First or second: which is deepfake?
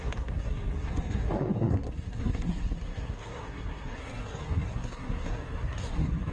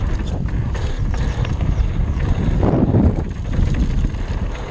first